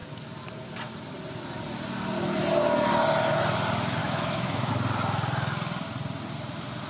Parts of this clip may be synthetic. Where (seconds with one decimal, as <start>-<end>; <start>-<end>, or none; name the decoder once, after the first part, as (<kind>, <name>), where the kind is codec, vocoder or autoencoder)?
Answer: 4.0-4.7 (autoencoder, DAC-VAE)